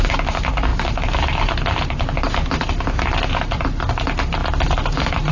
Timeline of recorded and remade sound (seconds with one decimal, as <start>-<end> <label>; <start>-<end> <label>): 0.0-5.3 recorded